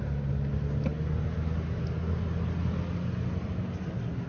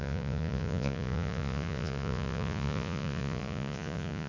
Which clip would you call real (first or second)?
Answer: first